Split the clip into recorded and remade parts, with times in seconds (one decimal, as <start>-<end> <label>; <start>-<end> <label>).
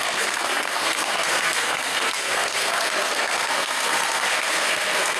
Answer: 0.0-5.2 remade